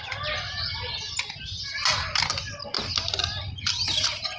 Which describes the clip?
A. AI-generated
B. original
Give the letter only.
B